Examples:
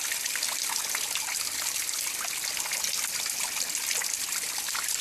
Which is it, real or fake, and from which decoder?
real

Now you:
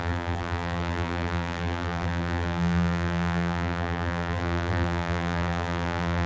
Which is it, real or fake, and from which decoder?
fake, vocoder, BigVGAN v2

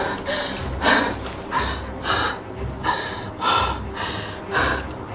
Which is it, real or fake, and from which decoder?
real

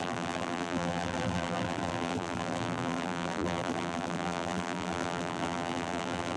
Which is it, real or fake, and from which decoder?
fake, vocoder, BigVGAN v2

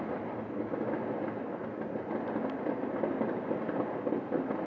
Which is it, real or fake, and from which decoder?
real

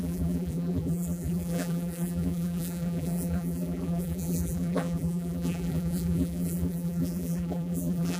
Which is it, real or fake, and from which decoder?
fake, vocoder, BigVGAN v2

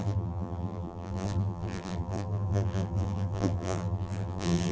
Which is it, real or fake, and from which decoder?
fake, vocoder, BigVGAN v2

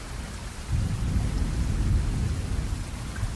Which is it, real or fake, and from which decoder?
real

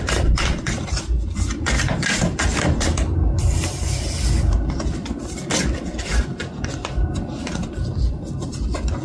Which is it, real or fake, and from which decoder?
fake, vocoder, BigVGAN v2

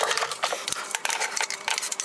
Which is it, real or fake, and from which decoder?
fake, vocoder, BigVGAN v2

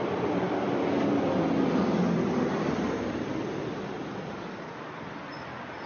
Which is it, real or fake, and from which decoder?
fake, vocoder, BigVGAN v2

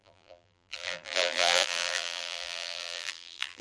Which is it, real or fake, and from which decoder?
fake, vocoder, BigVGAN v2